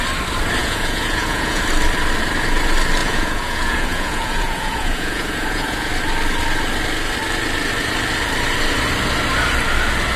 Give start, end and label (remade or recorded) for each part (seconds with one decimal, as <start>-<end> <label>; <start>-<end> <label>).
0.0-0.6 recorded; 0.6-1.6 remade; 1.6-3.0 recorded; 3.0-5.9 remade; 5.9-10.2 recorded